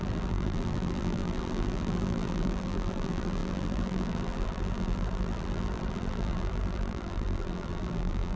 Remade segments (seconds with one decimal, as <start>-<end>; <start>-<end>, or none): 0.0-8.4